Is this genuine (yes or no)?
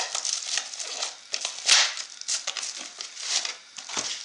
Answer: yes